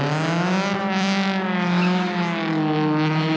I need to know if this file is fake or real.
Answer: real